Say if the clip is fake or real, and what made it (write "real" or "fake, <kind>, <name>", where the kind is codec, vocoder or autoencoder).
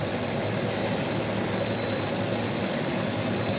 real